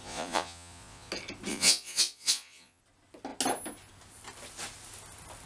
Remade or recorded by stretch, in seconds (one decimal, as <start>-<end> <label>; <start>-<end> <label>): 0.0-1.1 remade; 1.1-1.5 recorded; 1.5-2.8 remade; 2.8-5.5 recorded

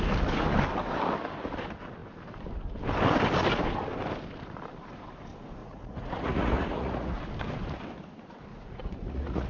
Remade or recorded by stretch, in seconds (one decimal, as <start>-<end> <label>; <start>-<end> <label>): 0.0-5.6 recorded; 5.6-7.2 remade; 7.2-8.5 recorded; 8.5-9.5 remade

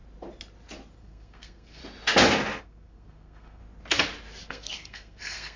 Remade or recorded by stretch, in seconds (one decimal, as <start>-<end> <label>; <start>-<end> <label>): 0.0-1.0 recorded; 1.0-1.8 remade; 1.8-2.6 recorded; 2.6-3.6 remade; 3.6-4.5 recorded; 4.5-5.6 remade